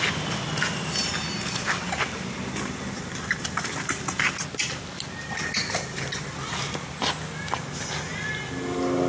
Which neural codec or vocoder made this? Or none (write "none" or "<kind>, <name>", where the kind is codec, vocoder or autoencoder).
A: none